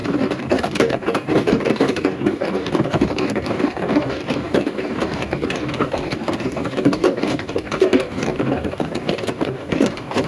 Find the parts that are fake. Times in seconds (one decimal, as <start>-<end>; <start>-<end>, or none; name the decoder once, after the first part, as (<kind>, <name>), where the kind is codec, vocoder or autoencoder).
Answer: 0.0-10.3 (codec, DAC)